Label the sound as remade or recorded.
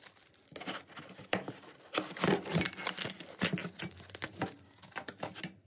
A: recorded